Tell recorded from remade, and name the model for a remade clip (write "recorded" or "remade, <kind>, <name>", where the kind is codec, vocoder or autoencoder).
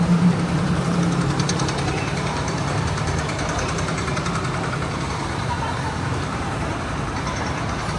remade, vocoder, BigVGAN v2